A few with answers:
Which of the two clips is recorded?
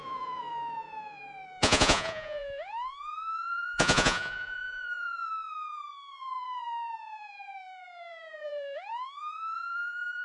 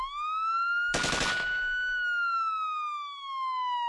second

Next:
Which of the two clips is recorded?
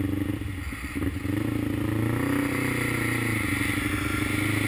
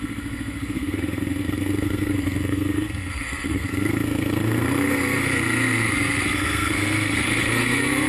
first